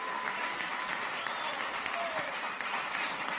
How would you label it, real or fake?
real